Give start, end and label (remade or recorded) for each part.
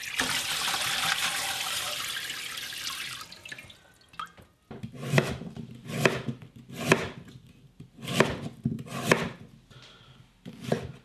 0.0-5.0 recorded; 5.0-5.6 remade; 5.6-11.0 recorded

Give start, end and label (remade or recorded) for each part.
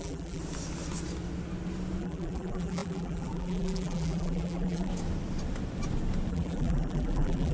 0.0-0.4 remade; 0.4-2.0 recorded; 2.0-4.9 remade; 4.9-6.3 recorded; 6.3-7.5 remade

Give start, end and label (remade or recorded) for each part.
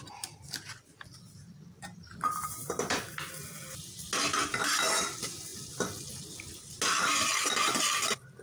0.0-8.4 recorded